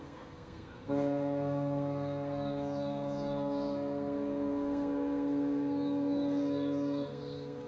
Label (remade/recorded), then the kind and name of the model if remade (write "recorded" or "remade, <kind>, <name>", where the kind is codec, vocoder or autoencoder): remade, codec, SNAC